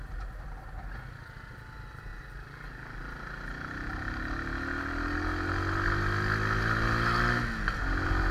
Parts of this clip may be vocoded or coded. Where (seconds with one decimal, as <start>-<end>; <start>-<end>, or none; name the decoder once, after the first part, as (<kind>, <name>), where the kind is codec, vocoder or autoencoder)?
none